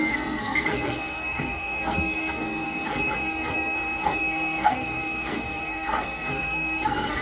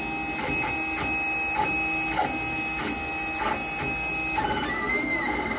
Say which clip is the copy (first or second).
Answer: first